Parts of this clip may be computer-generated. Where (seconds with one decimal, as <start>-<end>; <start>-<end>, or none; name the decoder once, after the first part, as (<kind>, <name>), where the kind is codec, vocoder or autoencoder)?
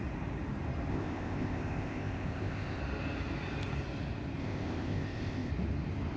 0.9-2.8 (codec, ZipCodec); 4.4-5.5